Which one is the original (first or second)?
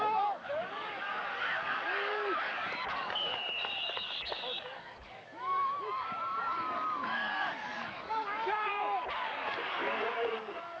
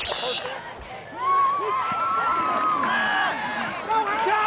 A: second